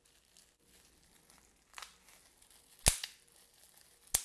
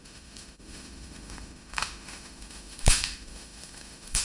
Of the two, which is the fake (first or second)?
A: second